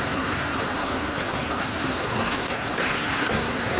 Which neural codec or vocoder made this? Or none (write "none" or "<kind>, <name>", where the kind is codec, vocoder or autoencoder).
codec, SNAC